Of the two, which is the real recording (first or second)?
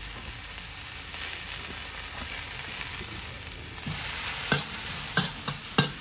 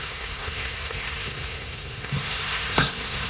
first